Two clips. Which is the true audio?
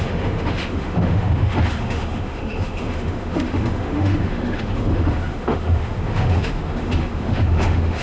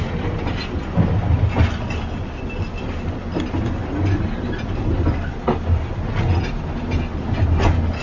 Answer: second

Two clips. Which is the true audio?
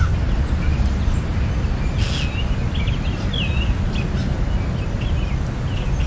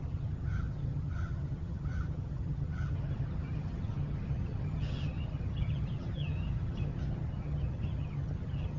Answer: first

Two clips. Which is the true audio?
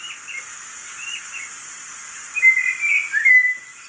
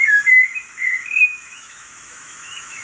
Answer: first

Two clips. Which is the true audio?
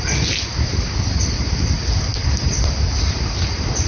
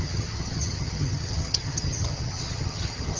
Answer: first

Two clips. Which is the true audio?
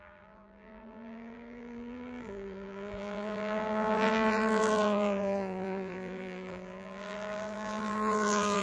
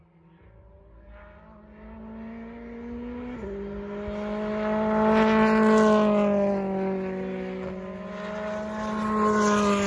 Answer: second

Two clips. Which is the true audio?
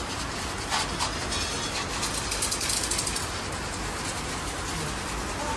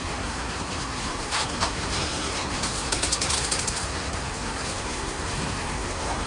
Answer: first